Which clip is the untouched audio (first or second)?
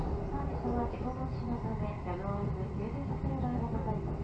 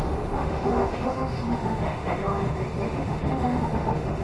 first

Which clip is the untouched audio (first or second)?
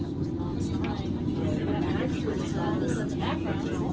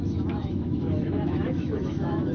first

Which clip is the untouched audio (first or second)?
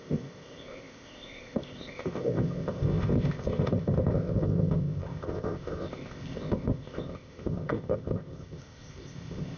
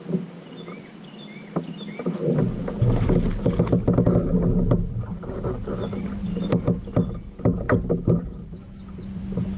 second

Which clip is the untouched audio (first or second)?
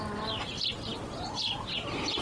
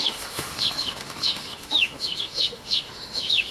first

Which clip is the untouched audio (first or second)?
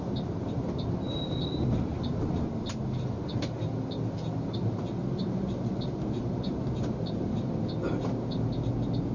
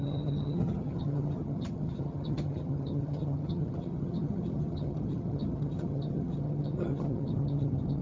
first